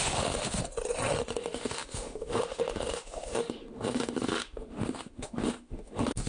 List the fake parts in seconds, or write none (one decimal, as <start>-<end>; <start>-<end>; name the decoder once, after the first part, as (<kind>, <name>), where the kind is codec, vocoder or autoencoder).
0.0-0.6 (autoencoder, DAC-VAE); 1.4-6.3